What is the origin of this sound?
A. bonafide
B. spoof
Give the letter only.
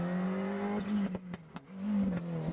A